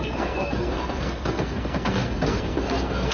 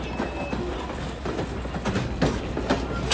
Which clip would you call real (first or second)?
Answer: second